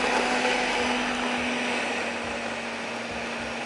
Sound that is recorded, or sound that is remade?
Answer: recorded